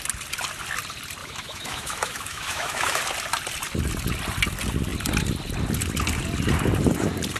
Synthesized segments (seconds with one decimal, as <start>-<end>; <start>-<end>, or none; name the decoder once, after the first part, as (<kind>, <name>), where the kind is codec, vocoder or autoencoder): 1.2-3.0 (autoencoder, DAC-VAE)